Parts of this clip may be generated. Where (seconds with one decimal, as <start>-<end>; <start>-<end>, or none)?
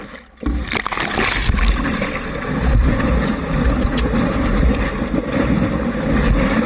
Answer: none